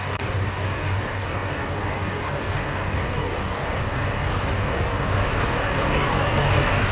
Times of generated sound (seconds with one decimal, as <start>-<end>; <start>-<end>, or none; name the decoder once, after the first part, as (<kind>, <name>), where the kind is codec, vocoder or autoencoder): 0.0-6.9 (codec, DAC)